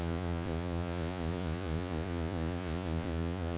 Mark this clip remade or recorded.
remade